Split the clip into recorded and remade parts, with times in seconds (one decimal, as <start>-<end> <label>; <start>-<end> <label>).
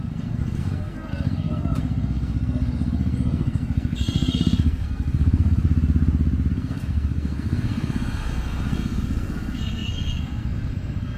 0.0-5.6 remade; 5.6-6.5 recorded; 6.5-11.2 remade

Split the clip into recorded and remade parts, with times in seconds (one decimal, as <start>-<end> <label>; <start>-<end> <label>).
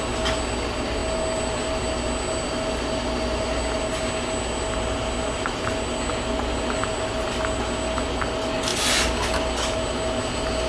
0.0-10.7 recorded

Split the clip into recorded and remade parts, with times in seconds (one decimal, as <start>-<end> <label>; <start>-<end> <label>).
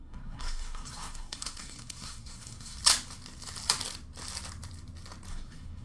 0.0-2.8 remade; 2.8-5.3 recorded; 5.3-5.8 remade